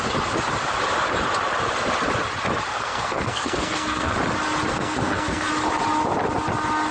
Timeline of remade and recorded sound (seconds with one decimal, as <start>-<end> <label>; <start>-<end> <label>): 0.0-2.7 recorded; 2.7-4.1 remade; 4.1-4.7 recorded; 4.7-5.5 remade; 5.5-6.9 recorded